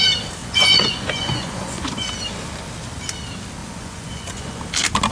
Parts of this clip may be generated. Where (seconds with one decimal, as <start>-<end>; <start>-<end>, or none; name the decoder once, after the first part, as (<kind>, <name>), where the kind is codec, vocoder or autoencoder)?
0.4-2.1 (vocoder, Vocos); 3.6-4.6